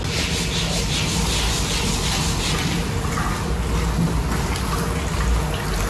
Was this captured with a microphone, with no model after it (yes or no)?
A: yes